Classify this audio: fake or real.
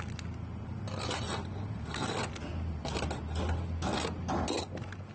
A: real